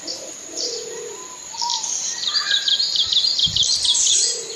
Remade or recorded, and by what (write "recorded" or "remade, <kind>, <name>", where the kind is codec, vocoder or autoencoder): remade, vocoder, BigVGAN v2